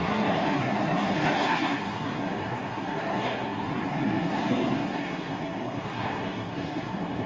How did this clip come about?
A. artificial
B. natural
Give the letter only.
A